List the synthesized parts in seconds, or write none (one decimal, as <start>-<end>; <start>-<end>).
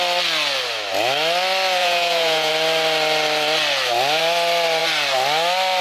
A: 1.8-2.5